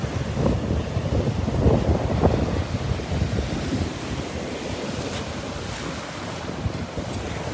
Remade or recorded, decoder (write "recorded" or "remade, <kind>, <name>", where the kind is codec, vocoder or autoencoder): recorded